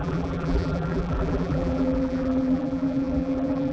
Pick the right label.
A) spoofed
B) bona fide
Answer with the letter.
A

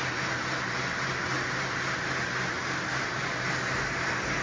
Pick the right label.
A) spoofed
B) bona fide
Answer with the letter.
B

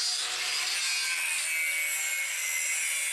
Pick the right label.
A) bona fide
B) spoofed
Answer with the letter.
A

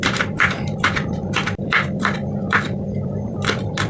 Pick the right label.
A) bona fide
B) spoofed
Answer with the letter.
B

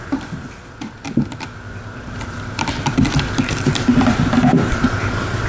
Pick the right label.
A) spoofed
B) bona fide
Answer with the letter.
A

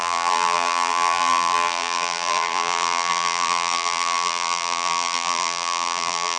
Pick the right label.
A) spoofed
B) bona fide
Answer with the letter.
A